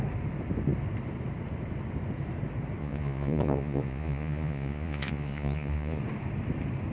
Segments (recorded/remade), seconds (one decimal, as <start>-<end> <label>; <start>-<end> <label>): 0.0-2.8 recorded; 2.8-6.0 remade; 6.0-6.9 recorded